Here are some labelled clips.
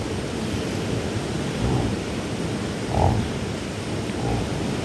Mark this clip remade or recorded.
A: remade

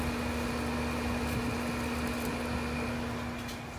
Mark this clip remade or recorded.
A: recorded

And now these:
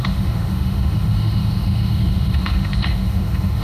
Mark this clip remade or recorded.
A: remade